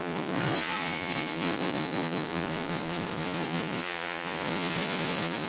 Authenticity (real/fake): fake